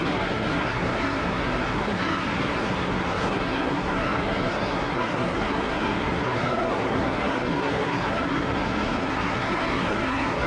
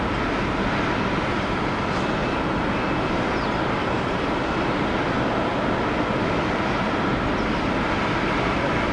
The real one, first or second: second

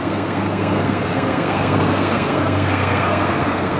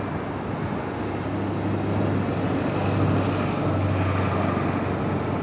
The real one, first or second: second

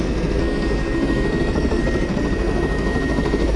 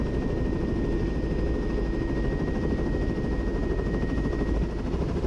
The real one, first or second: second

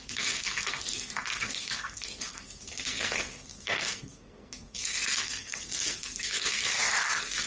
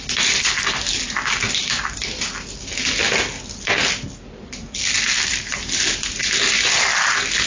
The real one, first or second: second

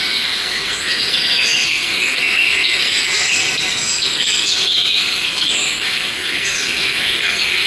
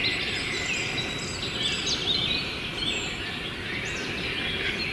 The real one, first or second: second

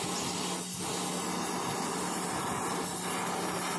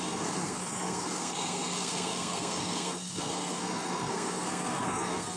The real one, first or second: first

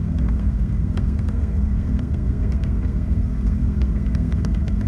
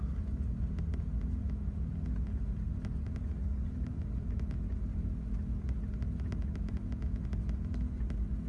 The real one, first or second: second